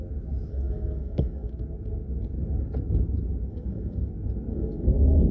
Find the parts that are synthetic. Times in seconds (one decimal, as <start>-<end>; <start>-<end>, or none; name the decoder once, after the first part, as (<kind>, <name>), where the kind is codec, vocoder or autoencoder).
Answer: 0.5-1.5 (codec, SNAC); 3.5-4.1; 4.5-5.3